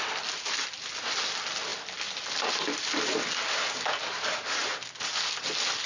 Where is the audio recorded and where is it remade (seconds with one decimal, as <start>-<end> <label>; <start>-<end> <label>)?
0.0-5.9 recorded